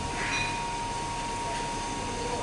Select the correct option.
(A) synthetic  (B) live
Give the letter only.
B